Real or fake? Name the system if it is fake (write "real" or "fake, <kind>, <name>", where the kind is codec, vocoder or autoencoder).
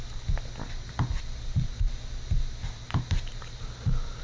real